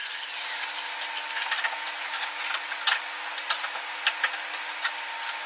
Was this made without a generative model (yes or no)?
yes